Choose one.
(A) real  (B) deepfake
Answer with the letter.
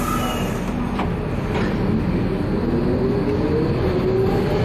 A